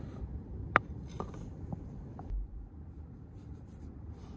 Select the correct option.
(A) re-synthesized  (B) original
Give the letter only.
A